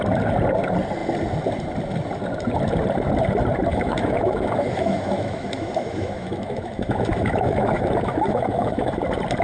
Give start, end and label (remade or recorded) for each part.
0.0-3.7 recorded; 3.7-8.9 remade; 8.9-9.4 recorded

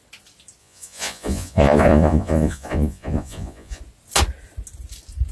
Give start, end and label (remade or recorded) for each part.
0.0-0.6 recorded; 0.6-3.8 remade; 3.8-5.3 recorded

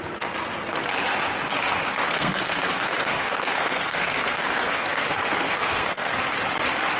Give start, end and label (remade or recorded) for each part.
0.0-2.0 recorded; 2.0-6.2 remade; 6.2-7.0 recorded

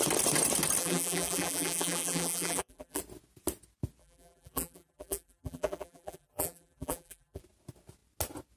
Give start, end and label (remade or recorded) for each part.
0.0-0.8 recorded; 0.8-3.0 remade; 3.0-4.0 recorded; 4.0-7.4 remade; 7.4-8.6 recorded

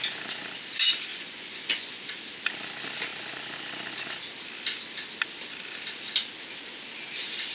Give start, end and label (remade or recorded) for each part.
0.0-1.1 recorded; 1.1-2.1 remade; 2.1-7.5 recorded

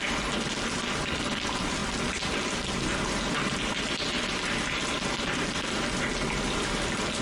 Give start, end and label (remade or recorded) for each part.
0.0-7.2 recorded

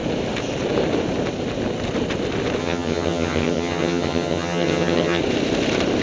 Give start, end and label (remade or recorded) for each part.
0.0-2.6 recorded; 2.6-5.2 remade; 5.2-6.0 recorded

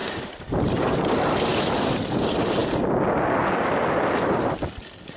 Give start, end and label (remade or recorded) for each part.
0.0-1.1 remade; 1.1-1.5 recorded; 1.5-2.0 remade; 2.0-5.2 recorded